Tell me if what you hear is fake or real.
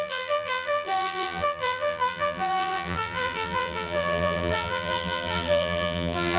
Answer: fake